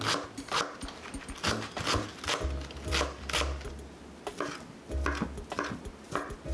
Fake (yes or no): no